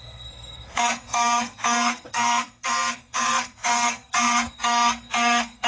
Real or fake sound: fake